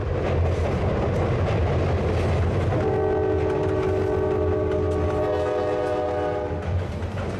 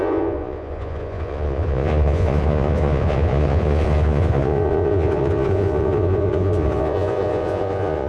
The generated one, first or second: second